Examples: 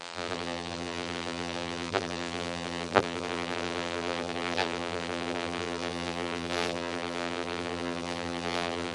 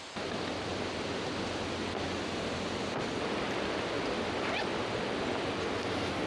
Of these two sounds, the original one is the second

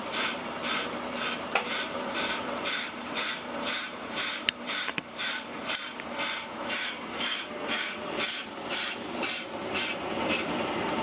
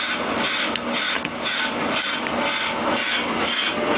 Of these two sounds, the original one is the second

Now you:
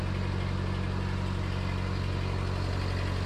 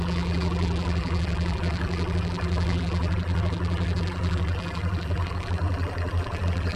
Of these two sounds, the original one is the first